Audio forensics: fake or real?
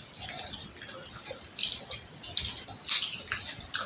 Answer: real